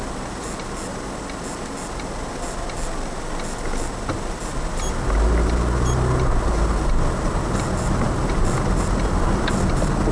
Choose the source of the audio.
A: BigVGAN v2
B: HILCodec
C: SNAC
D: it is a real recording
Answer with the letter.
D